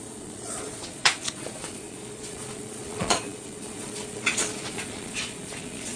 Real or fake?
fake